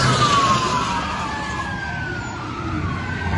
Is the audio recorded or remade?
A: recorded